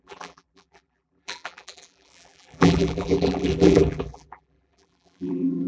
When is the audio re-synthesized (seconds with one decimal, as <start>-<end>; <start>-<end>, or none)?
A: 0.0-5.7